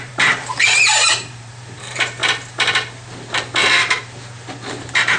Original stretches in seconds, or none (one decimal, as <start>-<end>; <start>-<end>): 2.2-4.7